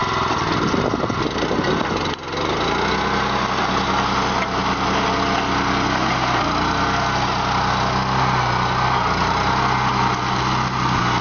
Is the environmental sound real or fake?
real